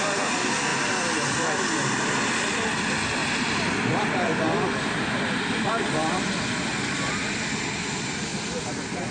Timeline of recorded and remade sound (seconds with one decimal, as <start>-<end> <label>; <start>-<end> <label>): 0.0-6.0 recorded; 6.0-7.1 remade; 7.1-8.3 recorded; 8.3-9.1 remade